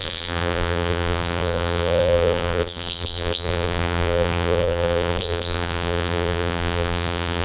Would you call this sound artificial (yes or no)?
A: yes